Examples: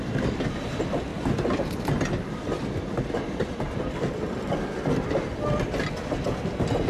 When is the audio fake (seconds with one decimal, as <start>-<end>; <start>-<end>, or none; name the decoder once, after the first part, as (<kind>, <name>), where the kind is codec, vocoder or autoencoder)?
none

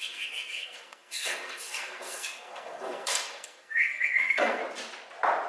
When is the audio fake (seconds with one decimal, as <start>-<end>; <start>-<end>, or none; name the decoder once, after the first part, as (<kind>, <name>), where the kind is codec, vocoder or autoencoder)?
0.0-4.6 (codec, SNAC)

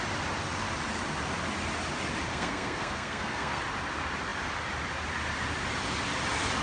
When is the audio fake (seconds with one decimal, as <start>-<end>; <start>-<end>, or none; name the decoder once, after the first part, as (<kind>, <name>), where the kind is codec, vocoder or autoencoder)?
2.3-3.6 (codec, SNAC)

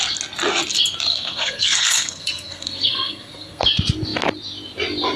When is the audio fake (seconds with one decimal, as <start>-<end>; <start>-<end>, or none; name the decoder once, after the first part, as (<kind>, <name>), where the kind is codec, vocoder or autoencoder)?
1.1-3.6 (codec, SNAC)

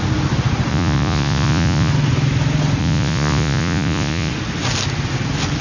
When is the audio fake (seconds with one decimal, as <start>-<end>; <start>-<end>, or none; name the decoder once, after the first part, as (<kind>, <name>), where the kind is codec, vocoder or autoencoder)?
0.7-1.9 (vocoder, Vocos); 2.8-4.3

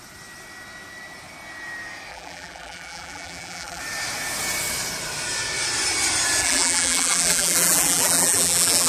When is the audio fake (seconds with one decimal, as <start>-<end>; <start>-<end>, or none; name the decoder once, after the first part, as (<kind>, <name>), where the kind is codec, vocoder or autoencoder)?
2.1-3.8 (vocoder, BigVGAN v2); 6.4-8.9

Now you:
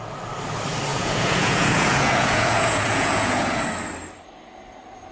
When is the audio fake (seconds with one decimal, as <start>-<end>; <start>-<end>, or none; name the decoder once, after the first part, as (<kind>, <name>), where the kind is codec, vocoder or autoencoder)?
0.9-3.7 (vocoder, Vocos)